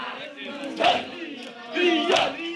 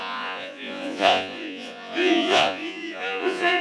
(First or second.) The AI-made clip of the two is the second